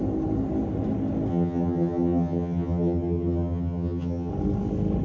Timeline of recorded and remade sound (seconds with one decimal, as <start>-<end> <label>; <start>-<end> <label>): 0.0-1.3 recorded; 1.3-4.3 remade; 4.3-5.0 recorded